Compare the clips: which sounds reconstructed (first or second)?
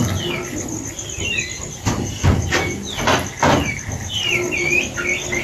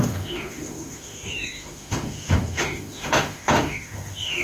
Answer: second